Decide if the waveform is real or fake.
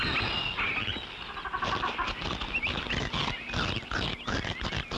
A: real